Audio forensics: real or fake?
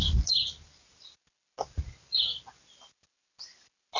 real